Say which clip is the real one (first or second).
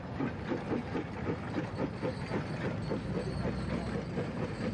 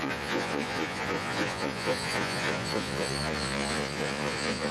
first